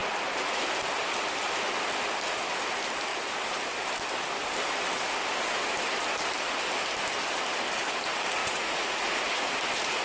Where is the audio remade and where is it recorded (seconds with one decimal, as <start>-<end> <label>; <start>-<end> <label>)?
0.0-0.6 remade; 0.6-8.4 recorded; 8.4-9.5 remade; 9.5-10.0 recorded